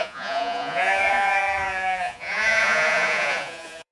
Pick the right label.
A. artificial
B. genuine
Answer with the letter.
A